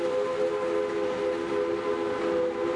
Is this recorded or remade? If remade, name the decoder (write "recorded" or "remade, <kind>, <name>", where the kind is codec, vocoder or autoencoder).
recorded